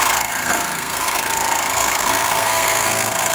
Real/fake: fake